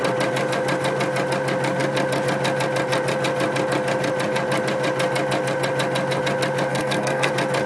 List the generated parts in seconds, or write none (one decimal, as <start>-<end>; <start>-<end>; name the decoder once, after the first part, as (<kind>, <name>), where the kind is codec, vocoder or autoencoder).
6.7-7.3 (codec, SNAC)